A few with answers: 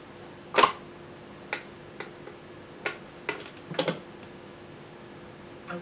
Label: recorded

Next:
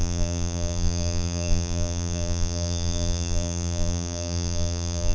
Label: remade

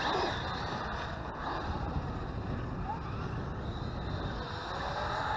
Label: recorded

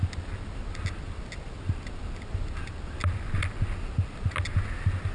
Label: recorded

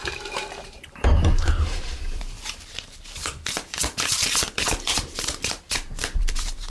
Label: remade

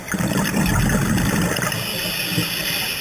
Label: recorded